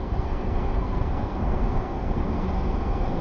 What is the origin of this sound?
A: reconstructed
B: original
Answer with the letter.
A